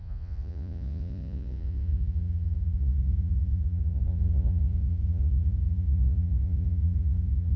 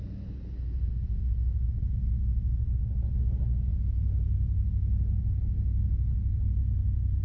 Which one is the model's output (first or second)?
first